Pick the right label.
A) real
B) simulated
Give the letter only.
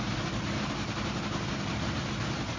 A